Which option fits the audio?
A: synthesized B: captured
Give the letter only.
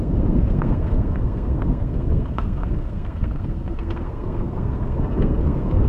A